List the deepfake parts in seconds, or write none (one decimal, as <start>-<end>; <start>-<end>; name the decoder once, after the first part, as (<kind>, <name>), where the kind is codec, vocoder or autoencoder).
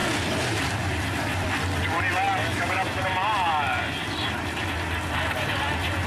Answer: 2.4-3.0 (autoencoder, DAC-VAE)